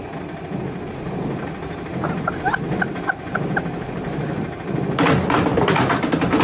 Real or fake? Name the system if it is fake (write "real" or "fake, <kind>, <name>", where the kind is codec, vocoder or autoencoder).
real